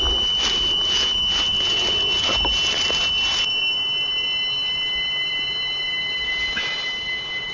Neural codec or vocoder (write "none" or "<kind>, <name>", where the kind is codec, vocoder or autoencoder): none